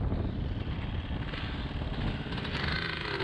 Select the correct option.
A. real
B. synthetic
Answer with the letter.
A